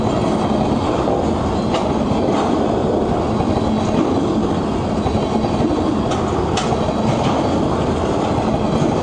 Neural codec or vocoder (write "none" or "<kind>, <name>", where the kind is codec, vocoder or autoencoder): none